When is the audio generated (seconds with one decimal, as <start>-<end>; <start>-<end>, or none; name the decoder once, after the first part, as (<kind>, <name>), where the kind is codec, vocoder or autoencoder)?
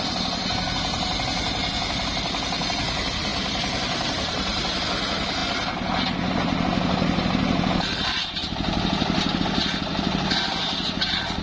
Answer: 3.3-4.8 (vocoder, BigVGAN v2)